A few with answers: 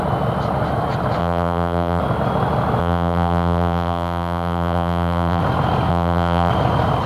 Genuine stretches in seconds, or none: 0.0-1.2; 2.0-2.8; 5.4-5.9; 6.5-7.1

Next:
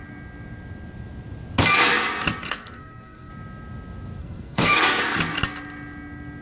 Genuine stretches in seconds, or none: 0.0-2.4; 3.3-4.2; 5.0-6.4

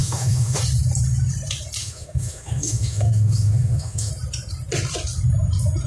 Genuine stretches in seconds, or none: 0.6-1.8; 4.1-5.9

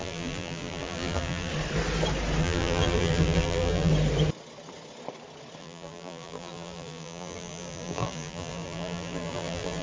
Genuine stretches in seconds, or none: 1.5-2.4; 3.9-5.6

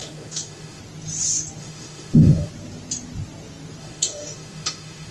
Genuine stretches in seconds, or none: 0.8-1.6; 2.5-3.8

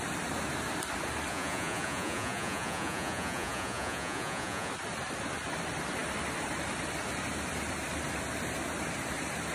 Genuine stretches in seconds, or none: 0.0-1.3; 4.7-9.5

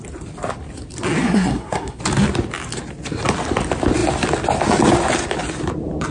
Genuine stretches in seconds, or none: 0.0-1.2; 2.0-6.1